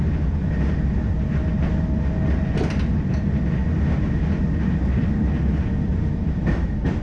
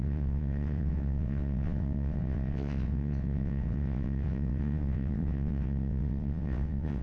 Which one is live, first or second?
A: first